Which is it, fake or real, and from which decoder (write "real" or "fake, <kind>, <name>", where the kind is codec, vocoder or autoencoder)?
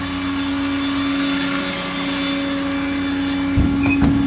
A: real